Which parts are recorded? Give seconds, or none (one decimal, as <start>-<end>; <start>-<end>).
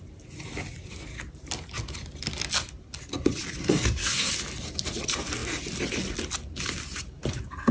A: 0.0-3.6; 4.3-7.7